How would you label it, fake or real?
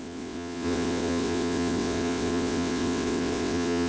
fake